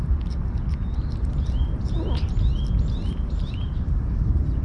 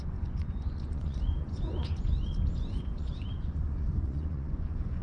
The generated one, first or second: second